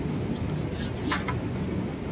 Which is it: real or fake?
real